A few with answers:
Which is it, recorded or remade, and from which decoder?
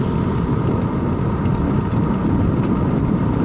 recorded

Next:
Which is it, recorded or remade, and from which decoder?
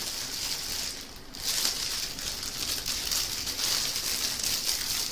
recorded